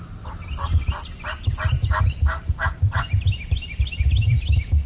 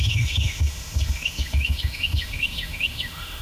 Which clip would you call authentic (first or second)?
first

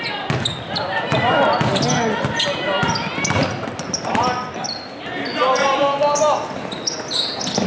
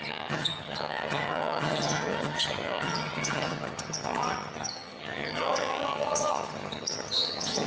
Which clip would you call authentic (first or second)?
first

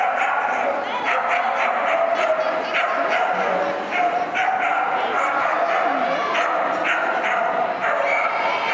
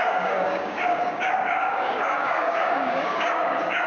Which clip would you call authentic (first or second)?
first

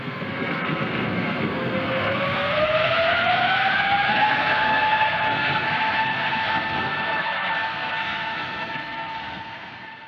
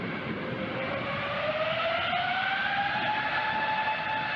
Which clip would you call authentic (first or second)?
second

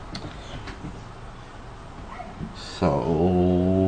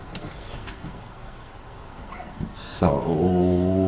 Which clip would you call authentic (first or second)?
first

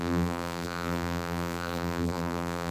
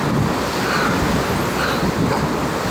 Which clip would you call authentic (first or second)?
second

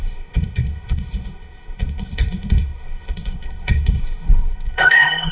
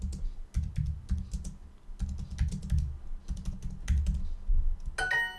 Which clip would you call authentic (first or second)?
second